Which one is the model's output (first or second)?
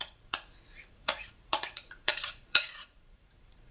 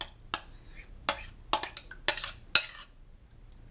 first